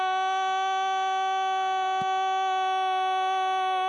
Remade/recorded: recorded